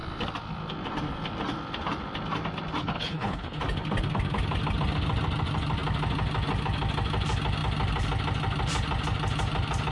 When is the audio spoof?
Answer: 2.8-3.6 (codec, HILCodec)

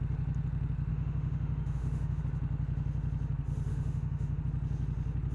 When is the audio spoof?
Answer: 0.9-2.2 (autoencoder, DAC-VAE); 3.7-4.4

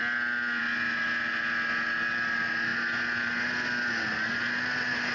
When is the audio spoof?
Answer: none

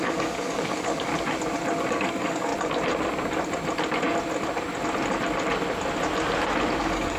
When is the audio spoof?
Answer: 0.0-1.1 (codec, DAC); 1.9-2.5; 6.8-7.2

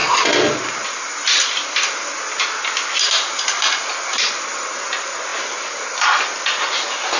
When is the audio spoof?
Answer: none